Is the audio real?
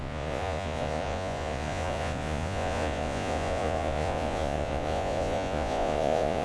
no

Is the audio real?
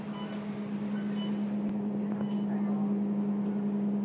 yes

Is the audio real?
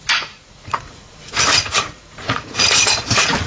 no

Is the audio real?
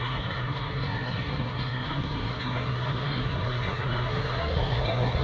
no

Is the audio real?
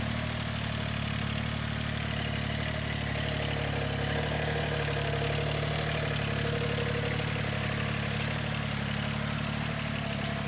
yes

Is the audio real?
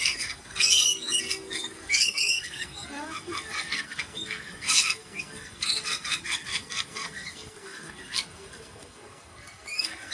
no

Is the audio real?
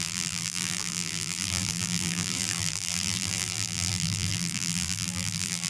no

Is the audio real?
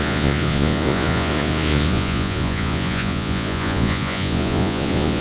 no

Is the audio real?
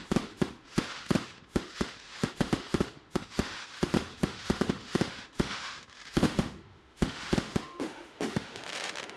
no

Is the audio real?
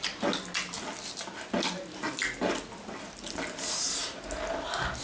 yes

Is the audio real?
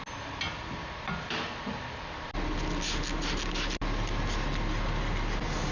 yes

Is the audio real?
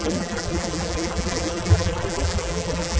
no